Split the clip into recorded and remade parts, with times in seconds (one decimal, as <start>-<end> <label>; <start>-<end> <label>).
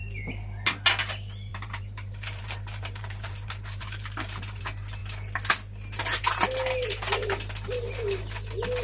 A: 0.0-1.5 recorded; 1.5-4.6 remade; 4.6-8.8 recorded